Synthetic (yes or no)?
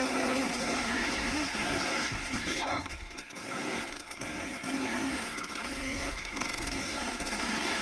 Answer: yes